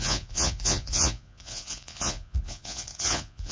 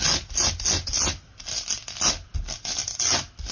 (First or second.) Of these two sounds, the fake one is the first